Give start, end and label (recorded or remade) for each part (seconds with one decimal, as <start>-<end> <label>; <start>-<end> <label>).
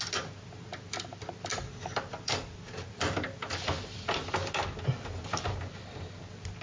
0.0-1.5 recorded; 1.5-3.7 remade; 3.7-6.6 recorded